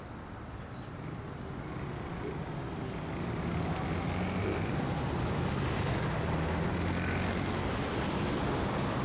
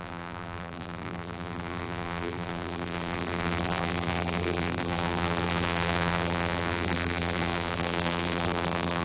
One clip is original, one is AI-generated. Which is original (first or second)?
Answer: first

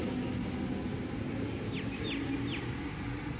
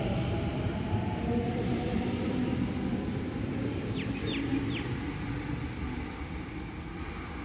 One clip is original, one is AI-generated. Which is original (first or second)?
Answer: first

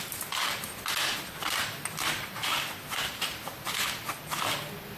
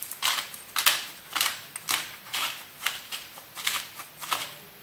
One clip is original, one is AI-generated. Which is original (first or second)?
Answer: first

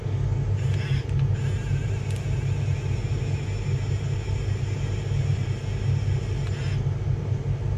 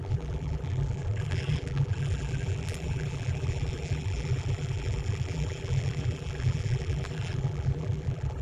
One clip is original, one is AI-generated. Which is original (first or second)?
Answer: first